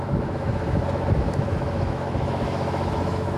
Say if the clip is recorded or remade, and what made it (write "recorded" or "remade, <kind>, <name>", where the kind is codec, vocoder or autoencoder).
remade, autoencoder, DAC-VAE